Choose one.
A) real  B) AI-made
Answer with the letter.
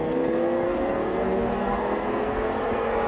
B